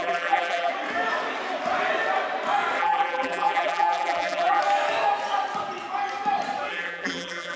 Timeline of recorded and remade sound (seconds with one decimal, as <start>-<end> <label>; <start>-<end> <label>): 0.0-0.7 remade; 0.7-2.8 recorded; 2.8-4.6 remade; 4.6-6.7 recorded; 6.7-7.6 remade